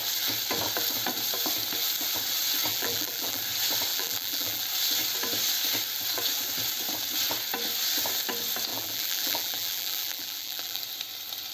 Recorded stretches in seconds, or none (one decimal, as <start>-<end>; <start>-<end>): 0.0-2.7; 3.4-3.9; 4.6-8.7; 10.8-11.5